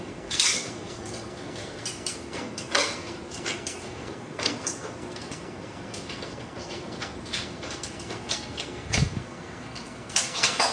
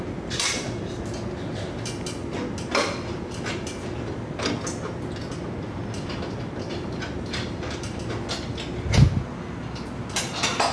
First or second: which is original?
second